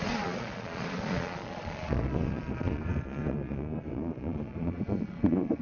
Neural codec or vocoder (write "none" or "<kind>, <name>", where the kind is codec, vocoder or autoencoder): vocoder, Vocos